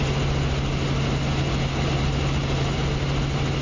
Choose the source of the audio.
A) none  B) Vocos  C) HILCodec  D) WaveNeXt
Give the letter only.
A